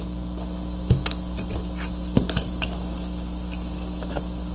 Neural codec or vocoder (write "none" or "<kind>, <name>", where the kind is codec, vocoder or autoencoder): none